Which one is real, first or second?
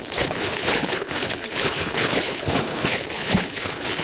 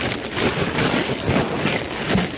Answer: second